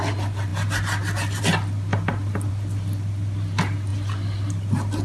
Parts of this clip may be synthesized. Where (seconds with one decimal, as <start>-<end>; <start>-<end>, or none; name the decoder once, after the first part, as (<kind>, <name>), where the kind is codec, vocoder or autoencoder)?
none